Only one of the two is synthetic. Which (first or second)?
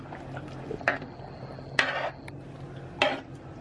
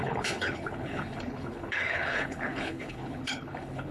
second